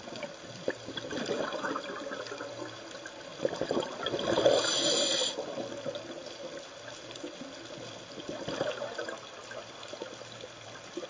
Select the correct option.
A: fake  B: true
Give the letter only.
A